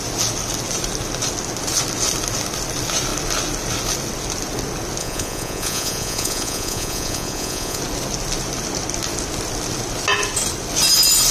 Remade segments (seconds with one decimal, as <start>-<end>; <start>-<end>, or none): 5.0-7.8

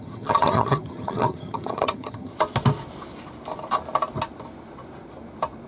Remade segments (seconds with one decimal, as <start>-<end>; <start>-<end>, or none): 0.0-2.3